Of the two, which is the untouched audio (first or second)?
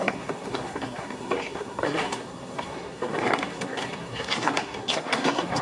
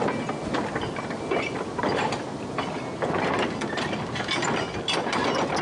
second